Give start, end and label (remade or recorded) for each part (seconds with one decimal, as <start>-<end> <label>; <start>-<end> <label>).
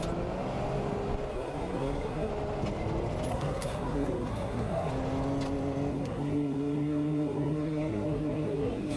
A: 0.0-1.3 recorded; 1.3-2.3 remade; 2.3-3.3 recorded; 3.3-4.9 remade; 4.9-5.9 recorded; 5.9-9.0 remade